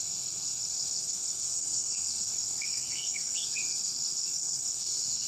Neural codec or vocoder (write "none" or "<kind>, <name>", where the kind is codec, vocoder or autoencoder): codec, SNAC